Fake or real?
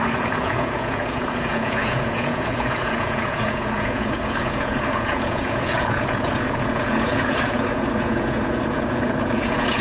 fake